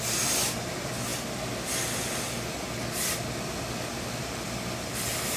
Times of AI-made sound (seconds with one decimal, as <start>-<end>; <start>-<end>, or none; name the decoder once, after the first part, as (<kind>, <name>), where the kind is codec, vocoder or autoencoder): none